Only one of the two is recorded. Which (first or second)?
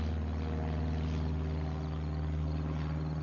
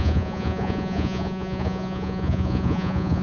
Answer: first